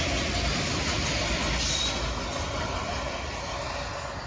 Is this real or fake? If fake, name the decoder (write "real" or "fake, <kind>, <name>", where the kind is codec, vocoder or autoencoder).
real